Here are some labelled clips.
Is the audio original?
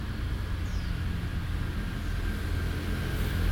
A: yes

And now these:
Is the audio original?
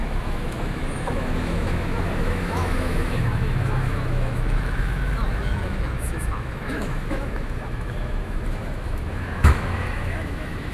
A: no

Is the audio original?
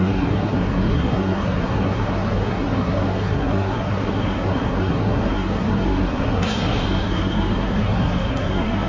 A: no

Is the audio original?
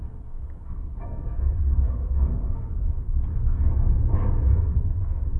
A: no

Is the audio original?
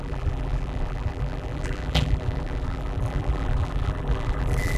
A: no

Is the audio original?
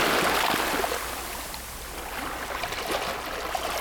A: yes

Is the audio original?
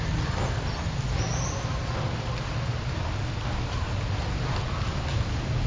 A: yes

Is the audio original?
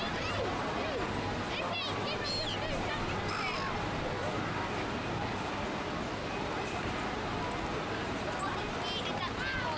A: yes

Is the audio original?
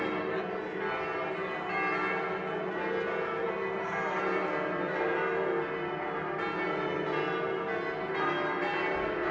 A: yes